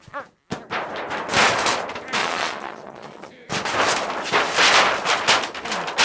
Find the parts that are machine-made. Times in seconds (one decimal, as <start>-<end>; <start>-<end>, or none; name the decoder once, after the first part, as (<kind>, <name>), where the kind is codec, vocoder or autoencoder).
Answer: 2.2-3.3 (vocoder, Vocos)

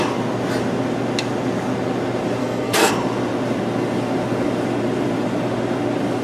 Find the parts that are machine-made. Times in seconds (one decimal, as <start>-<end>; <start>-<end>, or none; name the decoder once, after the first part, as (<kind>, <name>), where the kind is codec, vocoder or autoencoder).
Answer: 2.4-2.9 (codec, SNAC)

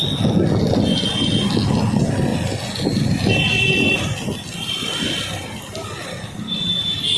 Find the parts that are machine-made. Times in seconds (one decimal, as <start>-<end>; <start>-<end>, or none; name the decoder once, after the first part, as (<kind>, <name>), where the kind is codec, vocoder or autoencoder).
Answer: 2.3-6.3 (vocoder, BigVGAN v2)

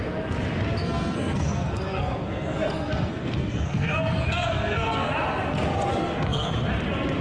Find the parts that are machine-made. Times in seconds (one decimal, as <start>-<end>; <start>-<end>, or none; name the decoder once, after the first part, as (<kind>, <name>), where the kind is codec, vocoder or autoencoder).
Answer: 0.8-5.1 (codec, SNAC); 5.9-6.5